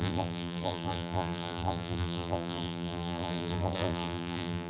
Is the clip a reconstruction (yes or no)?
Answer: yes